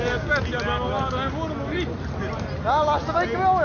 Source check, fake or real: real